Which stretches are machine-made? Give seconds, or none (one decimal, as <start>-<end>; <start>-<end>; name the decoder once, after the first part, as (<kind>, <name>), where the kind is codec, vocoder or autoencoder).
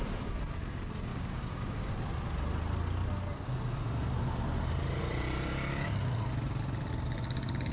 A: 1.1-1.9 (codec, DAC)